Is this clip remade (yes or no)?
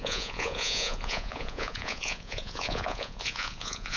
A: yes